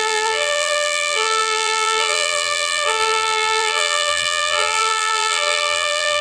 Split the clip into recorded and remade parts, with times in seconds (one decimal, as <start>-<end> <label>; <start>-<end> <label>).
0.0-6.2 remade